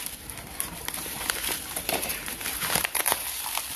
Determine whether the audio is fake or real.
fake